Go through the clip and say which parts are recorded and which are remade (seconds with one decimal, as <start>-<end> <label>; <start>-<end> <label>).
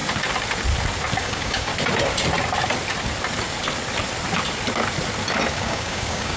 0.0-1.2 recorded; 1.2-1.7 remade; 1.7-5.5 recorded; 5.5-6.4 remade